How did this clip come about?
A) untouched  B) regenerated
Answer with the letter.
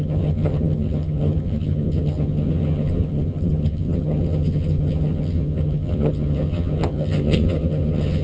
B